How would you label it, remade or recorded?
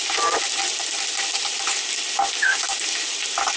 recorded